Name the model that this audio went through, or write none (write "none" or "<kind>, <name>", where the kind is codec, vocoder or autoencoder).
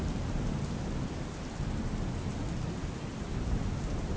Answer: none